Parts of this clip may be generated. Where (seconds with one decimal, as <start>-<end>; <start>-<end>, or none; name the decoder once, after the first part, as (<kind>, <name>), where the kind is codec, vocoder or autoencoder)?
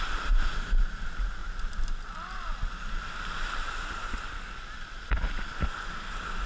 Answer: none